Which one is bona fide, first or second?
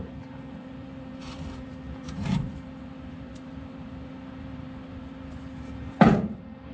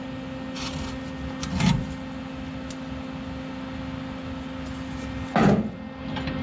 second